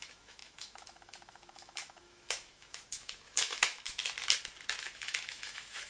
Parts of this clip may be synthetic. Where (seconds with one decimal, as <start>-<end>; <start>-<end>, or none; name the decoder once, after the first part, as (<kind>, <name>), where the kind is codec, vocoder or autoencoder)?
0.0-4.0 (autoencoder, DAC-VAE); 4.8-5.9